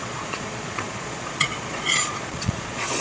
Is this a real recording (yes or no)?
no